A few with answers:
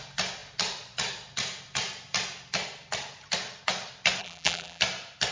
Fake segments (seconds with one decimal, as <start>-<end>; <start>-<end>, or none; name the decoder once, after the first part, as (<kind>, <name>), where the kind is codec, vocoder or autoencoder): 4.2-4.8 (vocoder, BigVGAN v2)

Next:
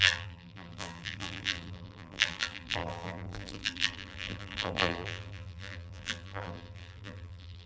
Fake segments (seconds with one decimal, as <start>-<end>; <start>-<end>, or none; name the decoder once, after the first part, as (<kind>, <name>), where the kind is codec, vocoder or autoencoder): 0.0-7.7 (vocoder, BigVGAN v2)

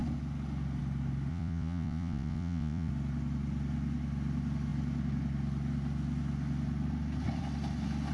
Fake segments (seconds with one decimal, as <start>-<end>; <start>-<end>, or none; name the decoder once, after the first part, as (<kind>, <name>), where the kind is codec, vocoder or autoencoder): 1.3-2.9 (vocoder, Vocos)

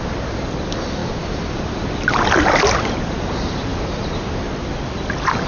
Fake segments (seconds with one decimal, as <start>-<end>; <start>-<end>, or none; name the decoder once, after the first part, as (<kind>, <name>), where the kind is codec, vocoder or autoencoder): 1.0-3.0 (vocoder, BigVGAN v2)

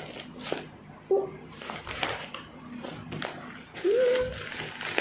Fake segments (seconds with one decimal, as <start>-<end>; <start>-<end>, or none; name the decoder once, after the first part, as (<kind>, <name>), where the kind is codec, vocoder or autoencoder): 1.3-4.3 (vocoder, BigVGAN v2)

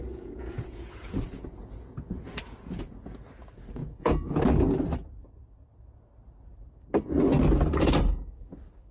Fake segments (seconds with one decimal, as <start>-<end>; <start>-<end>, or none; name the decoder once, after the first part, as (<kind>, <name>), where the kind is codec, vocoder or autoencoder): 0.0-3.2 (vocoder, Vocos); 3.8-4.3

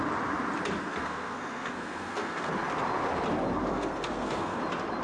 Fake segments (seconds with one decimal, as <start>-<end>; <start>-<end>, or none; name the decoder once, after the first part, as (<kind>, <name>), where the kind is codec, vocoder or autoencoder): 0.8-2.5 (codec, SNAC); 3.7-4.6

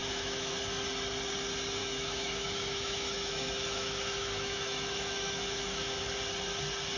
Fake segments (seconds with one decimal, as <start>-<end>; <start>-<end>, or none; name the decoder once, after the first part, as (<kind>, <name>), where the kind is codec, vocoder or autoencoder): 0.0-0.5 (autoencoder, DAC-VAE); 1.8-6.0